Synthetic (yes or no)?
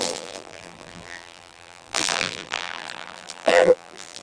yes